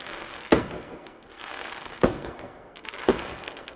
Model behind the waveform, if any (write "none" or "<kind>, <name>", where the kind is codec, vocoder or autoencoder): codec, SNAC